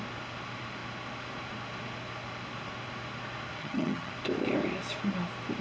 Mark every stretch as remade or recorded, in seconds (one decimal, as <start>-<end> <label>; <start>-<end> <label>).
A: 0.0-3.6 recorded; 3.6-4.1 remade; 4.1-5.6 recorded